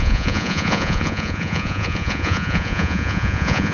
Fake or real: fake